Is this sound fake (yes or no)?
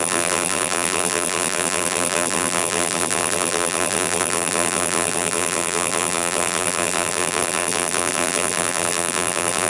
yes